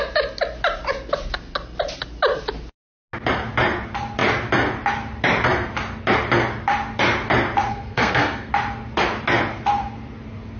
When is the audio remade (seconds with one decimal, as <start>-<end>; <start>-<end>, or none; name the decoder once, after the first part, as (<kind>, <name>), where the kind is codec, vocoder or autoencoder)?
7.7-8.5 (codec, SNAC)